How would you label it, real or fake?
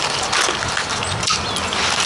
real